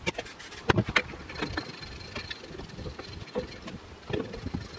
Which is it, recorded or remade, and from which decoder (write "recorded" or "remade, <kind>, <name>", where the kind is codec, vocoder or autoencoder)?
recorded